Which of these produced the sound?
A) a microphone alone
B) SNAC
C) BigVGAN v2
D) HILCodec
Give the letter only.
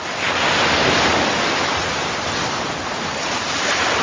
A